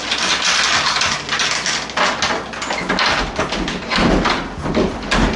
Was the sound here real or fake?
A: real